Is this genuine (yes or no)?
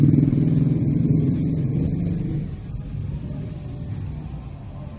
yes